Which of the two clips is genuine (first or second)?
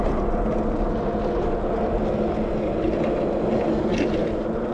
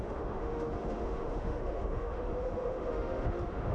first